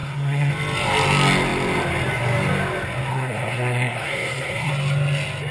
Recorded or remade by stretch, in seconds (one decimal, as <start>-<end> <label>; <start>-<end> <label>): 0.0-0.5 remade; 0.5-3.1 recorded; 3.1-4.7 remade; 4.7-5.5 recorded